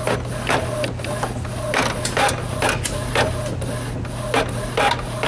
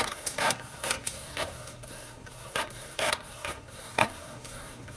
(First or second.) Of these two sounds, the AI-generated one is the second